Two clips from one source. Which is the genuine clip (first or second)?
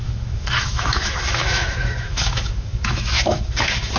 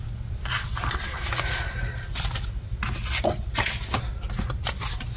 second